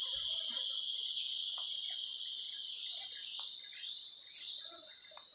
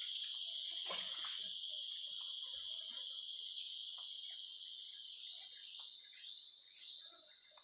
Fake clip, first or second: second